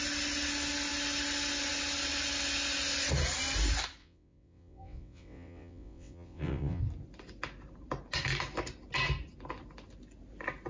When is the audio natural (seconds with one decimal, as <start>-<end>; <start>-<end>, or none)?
0.0-4.0; 6.8-10.7